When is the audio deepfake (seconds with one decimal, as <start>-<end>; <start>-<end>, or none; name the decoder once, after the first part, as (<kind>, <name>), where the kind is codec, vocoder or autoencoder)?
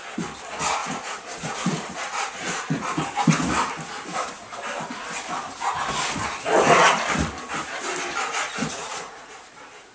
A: 0.8-2.7 (vocoder, Vocos); 8.3-9.4